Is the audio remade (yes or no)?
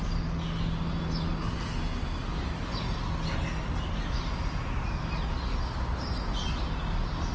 no